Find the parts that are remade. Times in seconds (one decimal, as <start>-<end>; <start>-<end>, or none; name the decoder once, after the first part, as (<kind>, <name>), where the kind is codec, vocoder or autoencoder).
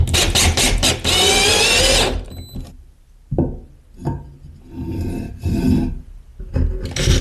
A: none